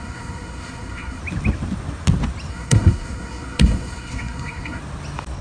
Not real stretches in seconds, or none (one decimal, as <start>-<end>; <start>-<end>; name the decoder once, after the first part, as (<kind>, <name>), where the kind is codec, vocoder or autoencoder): 0.0-1.2 (codec, SNAC); 2.5-4.8